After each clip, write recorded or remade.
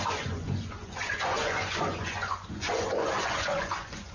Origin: remade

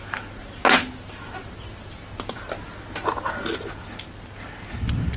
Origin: recorded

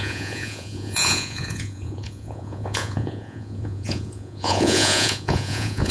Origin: remade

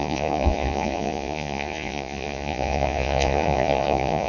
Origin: remade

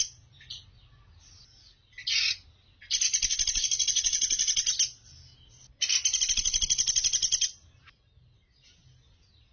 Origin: recorded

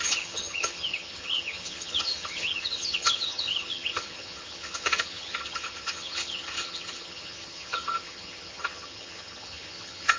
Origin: remade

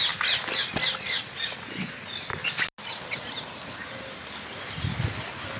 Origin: recorded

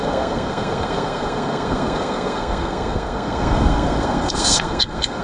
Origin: remade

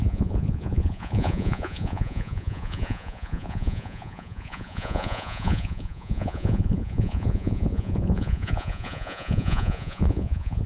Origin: remade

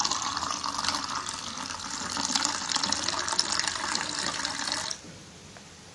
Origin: recorded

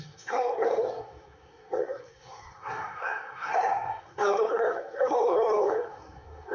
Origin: remade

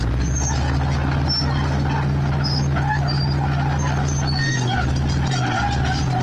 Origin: recorded